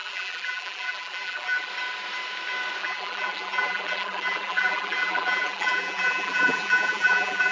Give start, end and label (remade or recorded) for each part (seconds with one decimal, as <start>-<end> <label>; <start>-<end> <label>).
0.0-1.7 remade; 1.7-2.8 recorded; 2.8-7.5 remade